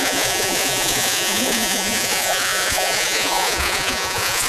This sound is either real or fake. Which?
fake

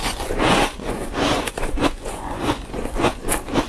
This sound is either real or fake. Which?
fake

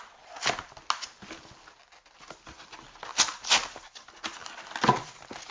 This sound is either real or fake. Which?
real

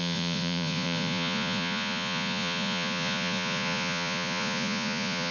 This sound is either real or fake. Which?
fake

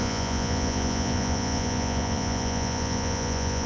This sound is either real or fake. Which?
fake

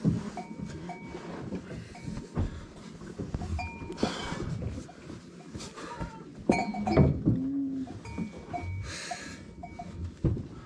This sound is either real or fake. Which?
real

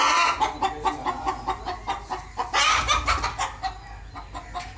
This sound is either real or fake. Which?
real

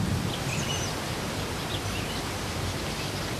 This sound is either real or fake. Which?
real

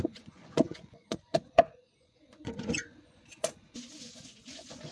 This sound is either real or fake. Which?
fake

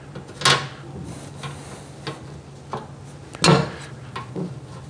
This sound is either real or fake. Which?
real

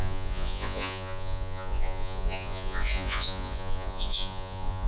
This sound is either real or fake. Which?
fake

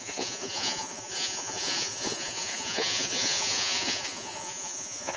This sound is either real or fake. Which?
fake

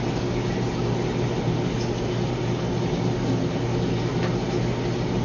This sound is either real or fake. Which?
real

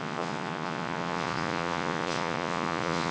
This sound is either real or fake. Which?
fake